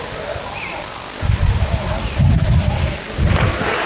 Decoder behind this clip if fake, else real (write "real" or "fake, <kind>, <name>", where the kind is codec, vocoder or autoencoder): real